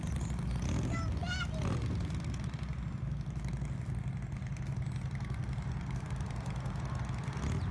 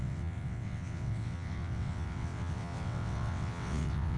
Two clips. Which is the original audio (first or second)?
first